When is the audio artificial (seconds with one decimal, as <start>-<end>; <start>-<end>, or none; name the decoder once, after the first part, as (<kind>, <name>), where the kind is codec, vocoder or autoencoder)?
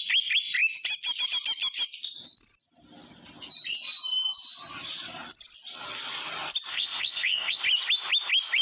6.7-7.6 (codec, ZipCodec)